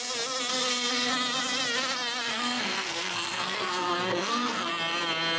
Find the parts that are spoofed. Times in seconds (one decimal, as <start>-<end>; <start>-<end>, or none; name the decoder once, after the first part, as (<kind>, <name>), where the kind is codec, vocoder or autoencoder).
0.5-1.1 (codec, SNAC); 2.3-4.7